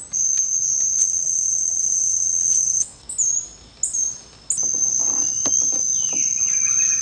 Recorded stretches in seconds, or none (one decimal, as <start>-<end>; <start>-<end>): 0.0-1.0; 3.0-7.0